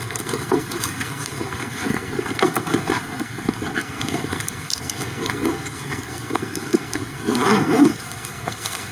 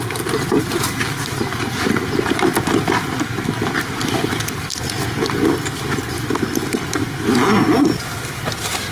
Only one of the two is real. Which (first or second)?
second